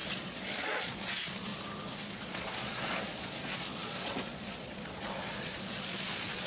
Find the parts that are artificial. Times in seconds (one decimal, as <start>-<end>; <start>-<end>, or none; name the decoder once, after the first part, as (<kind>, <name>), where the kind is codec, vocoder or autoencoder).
0.0-1.5 (vocoder, Vocos); 2.1-6.5